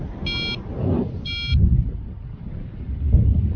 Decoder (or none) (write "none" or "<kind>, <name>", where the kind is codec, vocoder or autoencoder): none